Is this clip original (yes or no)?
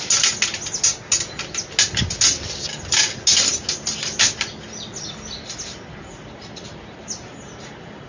yes